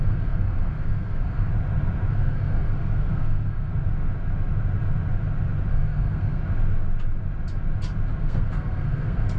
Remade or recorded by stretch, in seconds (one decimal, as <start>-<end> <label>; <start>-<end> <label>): 0.0-1.5 remade; 1.5-2.1 recorded; 2.1-3.7 remade; 3.7-5.7 recorded; 5.7-6.4 remade; 6.4-8.2 recorded; 8.2-9.4 remade